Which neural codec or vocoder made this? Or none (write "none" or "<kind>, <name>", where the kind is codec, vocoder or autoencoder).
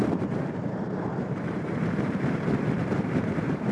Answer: vocoder, BigVGAN v2